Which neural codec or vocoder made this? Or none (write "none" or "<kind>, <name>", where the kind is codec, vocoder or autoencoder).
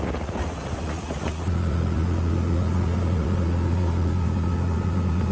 vocoder, Vocos